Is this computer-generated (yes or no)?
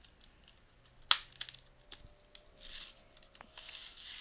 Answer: no